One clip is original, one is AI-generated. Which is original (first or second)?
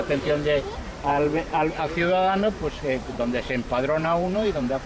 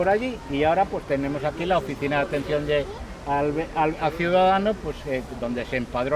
second